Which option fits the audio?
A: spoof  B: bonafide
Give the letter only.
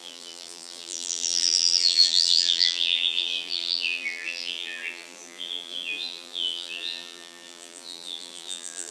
A